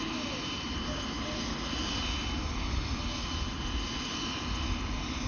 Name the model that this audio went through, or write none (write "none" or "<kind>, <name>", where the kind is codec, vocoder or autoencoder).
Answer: none